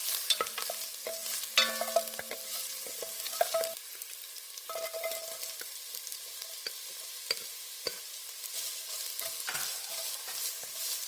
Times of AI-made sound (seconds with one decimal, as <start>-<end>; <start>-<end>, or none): none